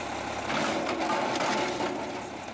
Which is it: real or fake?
real